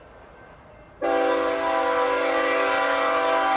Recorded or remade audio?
recorded